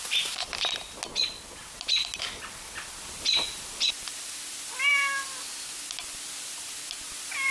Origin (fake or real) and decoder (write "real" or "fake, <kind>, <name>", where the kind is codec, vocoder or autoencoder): real